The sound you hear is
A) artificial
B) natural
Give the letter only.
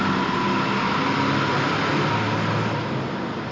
B